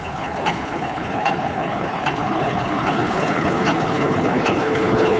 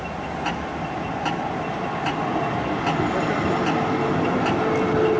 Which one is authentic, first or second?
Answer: second